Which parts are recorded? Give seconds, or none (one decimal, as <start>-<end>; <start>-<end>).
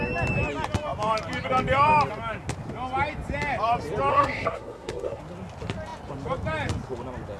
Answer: 0.0-4.1; 5.2-7.4